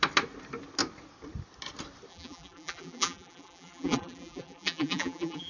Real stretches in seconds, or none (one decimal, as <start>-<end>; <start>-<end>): 0.0-2.1